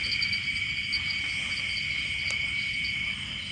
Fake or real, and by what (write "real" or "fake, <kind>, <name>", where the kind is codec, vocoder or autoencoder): real